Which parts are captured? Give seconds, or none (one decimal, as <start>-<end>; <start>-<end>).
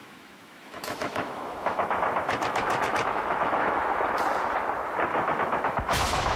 3.8-5.1